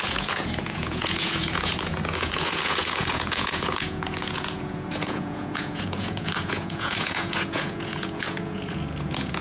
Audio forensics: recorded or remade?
remade